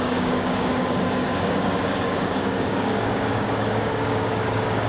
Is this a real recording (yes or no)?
no